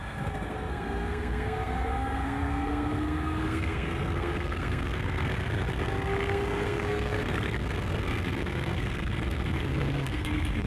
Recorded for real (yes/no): no